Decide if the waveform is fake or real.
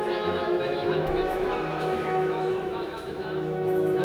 fake